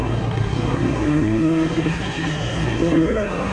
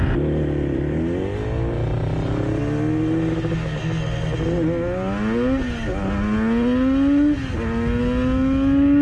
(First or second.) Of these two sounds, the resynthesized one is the first